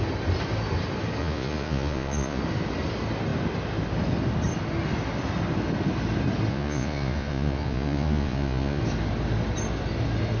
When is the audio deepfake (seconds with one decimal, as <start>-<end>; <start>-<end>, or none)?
1.2-2.4; 6.5-8.8